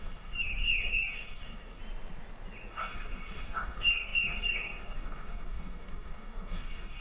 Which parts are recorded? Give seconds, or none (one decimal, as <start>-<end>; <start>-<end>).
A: 1.8-2.7